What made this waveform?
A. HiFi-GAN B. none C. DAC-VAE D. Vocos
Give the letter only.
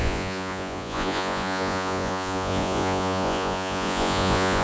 D